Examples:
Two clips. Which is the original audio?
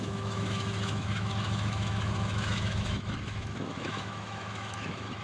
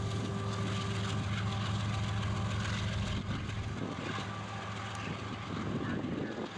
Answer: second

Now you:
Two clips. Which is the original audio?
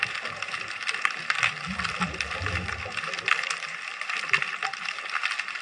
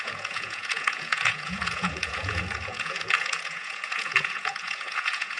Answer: first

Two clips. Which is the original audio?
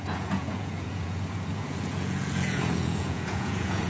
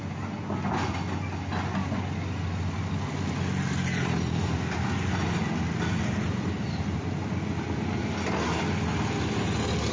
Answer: second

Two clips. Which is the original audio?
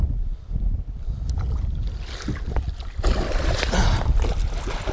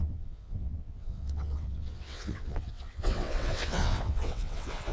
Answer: first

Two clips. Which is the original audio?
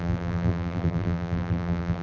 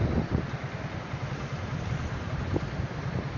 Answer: second